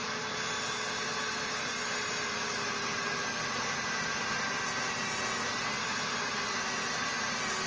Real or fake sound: real